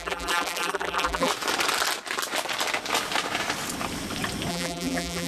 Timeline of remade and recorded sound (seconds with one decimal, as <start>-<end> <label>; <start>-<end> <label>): 0.0-1.3 remade; 1.3-4.5 recorded; 4.5-5.3 remade

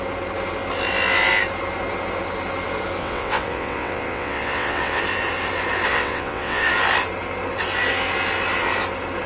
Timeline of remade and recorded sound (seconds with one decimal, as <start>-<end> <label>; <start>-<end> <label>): 0.0-3.0 recorded; 3.0-5.0 remade; 5.0-5.9 recorded; 5.9-6.7 remade; 6.7-9.3 recorded

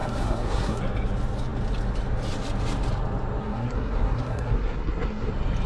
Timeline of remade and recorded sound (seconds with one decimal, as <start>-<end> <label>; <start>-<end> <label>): 0.0-0.8 remade; 0.8-3.4 recorded; 3.4-5.3 remade; 5.3-5.7 recorded

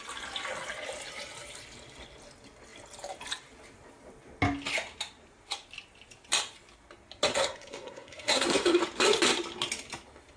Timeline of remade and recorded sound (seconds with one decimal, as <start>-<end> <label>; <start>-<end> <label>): 0.0-7.3 recorded; 7.3-8.8 remade; 8.8-10.4 recorded

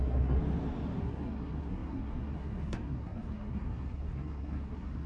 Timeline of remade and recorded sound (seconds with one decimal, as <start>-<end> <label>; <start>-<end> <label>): 0.0-0.4 remade; 0.4-1.0 recorded; 1.0-5.1 remade